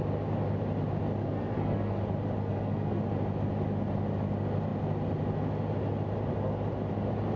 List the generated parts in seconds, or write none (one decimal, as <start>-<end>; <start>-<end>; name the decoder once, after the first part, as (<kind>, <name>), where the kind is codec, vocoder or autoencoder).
1.2-2.0 (codec, SNAC); 2.4-3.0